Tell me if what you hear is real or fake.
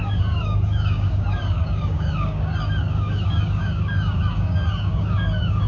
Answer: fake